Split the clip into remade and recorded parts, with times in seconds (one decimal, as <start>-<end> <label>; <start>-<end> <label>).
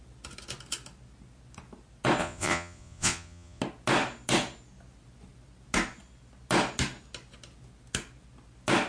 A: 0.0-2.2 recorded; 2.2-3.6 remade; 3.6-8.9 recorded